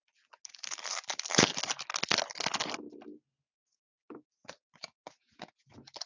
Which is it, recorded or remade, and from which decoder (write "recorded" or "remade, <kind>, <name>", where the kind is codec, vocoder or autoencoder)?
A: recorded